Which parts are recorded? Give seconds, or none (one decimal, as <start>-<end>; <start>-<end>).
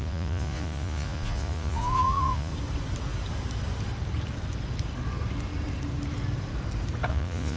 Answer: 2.5-7.1